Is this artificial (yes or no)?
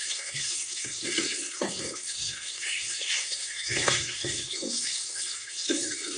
yes